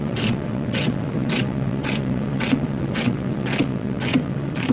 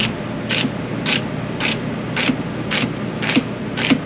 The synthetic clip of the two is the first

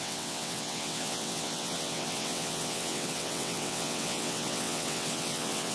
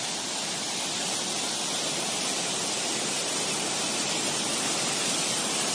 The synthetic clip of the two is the first